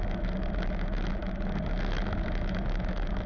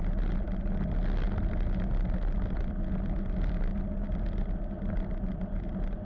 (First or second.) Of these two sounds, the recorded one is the second